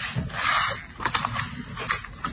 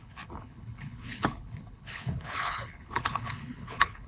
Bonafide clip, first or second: first